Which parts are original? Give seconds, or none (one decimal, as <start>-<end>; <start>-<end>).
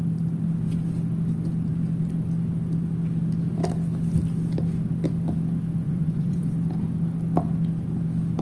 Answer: 0.0-5.8; 6.5-8.4